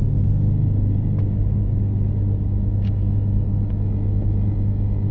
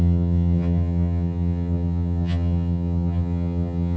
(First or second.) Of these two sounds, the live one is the first